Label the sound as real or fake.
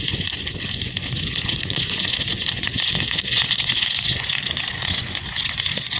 fake